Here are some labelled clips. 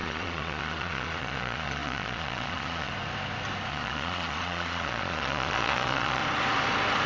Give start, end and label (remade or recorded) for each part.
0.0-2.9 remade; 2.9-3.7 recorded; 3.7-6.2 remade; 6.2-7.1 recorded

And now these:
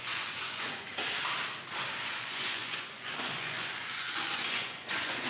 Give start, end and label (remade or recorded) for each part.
0.0-0.9 remade; 0.9-2.0 recorded; 2.0-5.3 remade

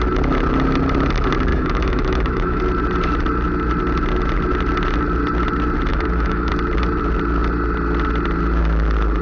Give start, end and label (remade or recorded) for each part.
0.0-1.5 recorded; 1.5-2.6 remade; 2.6-5.9 recorded; 5.9-6.5 remade; 6.5-9.2 recorded